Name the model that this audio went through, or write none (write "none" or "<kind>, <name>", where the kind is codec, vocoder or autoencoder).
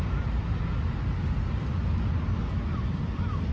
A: none